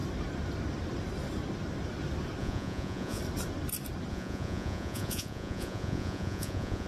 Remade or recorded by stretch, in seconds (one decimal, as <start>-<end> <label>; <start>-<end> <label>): 0.0-2.4 recorded; 2.4-3.2 remade; 3.2-4.1 recorded; 4.1-6.9 remade

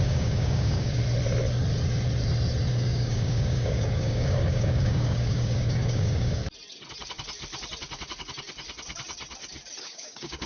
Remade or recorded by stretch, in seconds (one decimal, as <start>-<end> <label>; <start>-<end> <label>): 0.0-1.0 remade; 1.0-2.7 recorded; 2.7-6.4 remade; 6.4-9.8 recorded; 9.8-10.5 remade

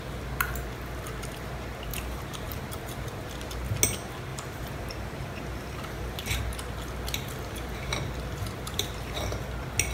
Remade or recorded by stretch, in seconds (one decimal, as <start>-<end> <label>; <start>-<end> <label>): 0.0-1.9 recorded; 1.9-2.9 remade; 2.9-4.3 recorded; 4.3-6.4 remade; 6.4-9.9 recorded

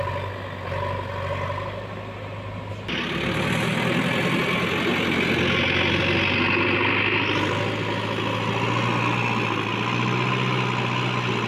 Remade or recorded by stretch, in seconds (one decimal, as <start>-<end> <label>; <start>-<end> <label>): 0.0-11.5 recorded

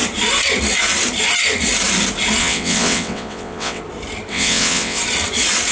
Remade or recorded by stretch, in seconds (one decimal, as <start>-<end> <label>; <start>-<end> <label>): 0.0-2.4 recorded; 2.4-3.8 remade; 3.8-4.3 recorded; 4.3-5.0 remade; 5.0-5.7 recorded

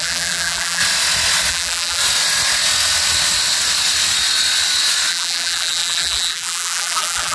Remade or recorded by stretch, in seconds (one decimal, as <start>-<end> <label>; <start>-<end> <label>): 0.0-0.8 remade; 0.8-1.5 recorded; 1.5-2.0 remade; 2.0-5.1 recorded; 5.1-7.3 remade